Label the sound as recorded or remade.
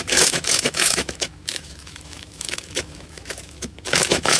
remade